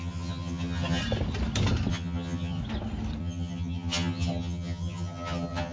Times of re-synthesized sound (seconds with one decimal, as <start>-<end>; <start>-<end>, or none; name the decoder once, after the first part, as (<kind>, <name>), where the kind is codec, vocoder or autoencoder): 0.0-1.0 (vocoder, HiFi-GAN); 1.9-2.6; 3.2-5.7

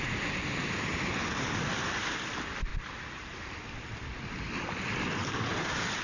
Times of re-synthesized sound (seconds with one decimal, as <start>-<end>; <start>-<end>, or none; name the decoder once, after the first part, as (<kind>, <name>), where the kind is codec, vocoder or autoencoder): none

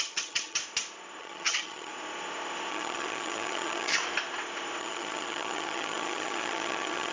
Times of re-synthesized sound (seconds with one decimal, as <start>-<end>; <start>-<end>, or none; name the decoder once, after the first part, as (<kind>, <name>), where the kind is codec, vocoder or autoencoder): 0.0-0.6 (vocoder, HiFi-GAN); 1.2-1.9; 2.7-4.0; 4.8-7.1

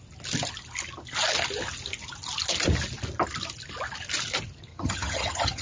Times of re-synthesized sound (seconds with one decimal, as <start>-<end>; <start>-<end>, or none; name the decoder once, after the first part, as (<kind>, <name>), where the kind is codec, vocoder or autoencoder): 4.7-5.6 (vocoder, HiFi-GAN)

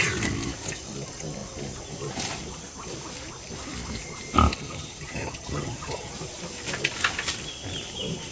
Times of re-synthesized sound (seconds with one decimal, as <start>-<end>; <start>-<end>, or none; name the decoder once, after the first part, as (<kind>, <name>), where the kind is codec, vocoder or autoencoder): 4.5-6.1 (vocoder, HiFi-GAN)

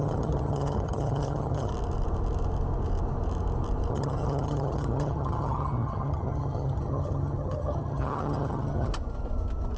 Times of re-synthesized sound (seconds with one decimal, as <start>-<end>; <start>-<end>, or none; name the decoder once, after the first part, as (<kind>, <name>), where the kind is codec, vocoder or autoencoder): 0.0-1.7 (vocoder, HiFi-GAN); 3.9-8.9

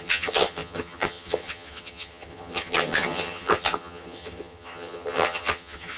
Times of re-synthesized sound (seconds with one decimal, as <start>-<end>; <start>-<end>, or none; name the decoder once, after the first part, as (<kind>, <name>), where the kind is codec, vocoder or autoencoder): 0.0-6.0 (vocoder, HiFi-GAN)

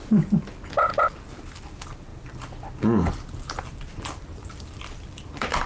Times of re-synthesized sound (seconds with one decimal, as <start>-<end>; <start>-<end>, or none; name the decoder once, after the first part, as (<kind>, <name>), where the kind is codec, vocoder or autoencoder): none